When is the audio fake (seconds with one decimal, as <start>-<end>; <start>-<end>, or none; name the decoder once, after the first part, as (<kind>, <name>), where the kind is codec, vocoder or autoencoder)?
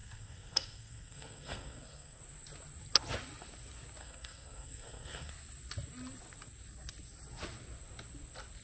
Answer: 0.0-2.2 (codec, SNAC); 4.0-5.3